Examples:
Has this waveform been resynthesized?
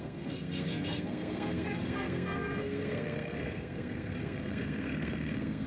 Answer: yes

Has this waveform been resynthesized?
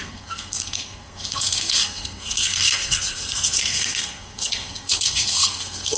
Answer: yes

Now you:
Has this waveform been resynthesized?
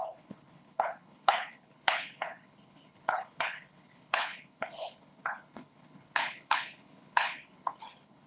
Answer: yes